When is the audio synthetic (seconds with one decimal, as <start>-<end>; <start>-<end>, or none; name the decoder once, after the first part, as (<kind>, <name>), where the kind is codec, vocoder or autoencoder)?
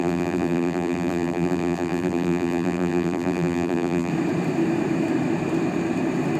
0.0-4.1 (vocoder, BigVGAN v2)